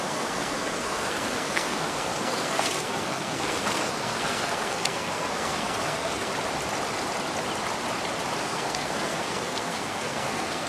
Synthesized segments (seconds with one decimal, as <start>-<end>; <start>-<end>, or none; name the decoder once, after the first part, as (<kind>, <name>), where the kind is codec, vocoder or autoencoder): 0.0-6.3 (codec, SNAC); 8.4-10.7